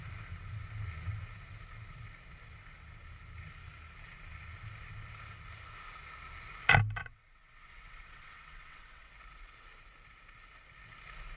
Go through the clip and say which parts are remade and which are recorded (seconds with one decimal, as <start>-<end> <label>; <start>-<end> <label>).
0.0-7.0 recorded; 7.0-9.1 remade; 9.1-11.4 recorded